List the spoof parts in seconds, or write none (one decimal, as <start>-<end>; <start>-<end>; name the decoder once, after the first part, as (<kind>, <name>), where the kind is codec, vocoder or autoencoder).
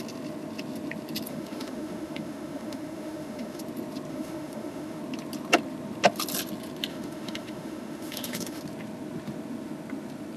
1.3-3.6 (autoencoder, DAC-VAE); 4.1-5.0; 6.9-8.6